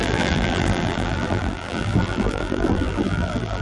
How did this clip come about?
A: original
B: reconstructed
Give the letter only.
B